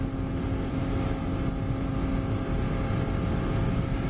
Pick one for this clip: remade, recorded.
recorded